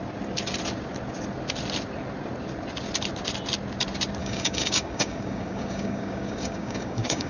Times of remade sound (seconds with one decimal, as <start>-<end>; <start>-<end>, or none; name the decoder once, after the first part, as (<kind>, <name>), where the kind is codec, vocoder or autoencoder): 4.2-7.3 (codec, DAC)